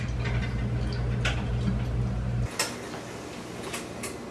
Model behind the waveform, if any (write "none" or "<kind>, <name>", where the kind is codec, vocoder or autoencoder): none